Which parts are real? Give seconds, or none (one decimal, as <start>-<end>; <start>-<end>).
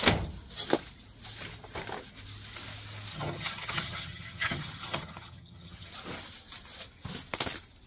0.0-3.1; 5.9-7.9